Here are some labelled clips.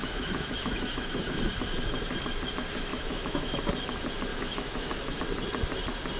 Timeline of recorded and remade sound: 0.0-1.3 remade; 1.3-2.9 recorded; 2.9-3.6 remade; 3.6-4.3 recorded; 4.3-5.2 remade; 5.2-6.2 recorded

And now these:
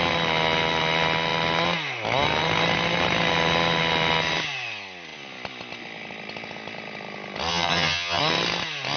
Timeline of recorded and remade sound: 0.0-7.5 recorded; 7.5-8.2 remade; 8.2-9.0 recorded

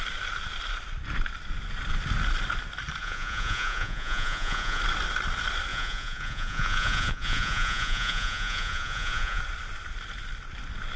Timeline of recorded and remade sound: 0.0-3.0 recorded; 3.0-4.8 remade; 4.8-5.7 recorded; 5.7-9.4 remade; 9.4-11.0 recorded

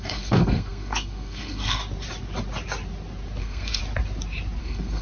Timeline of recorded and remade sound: 0.0-1.8 remade; 1.8-3.4 recorded; 3.4-3.8 remade; 3.8-4.6 recorded; 4.6-5.0 remade

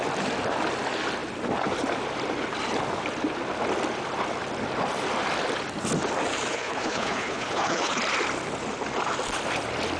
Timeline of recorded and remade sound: 0.0-6.5 recorded; 6.5-8.0 remade; 8.0-10.0 recorded

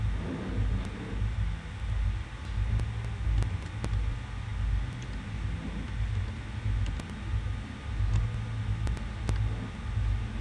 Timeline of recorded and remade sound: 0.0-10.4 recorded

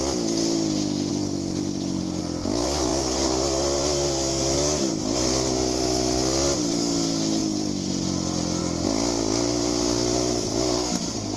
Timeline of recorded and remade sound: 0.0-1.1 recorded; 1.1-2.2 remade; 2.2-7.4 recorded; 7.4-7.9 remade; 7.9-11.4 recorded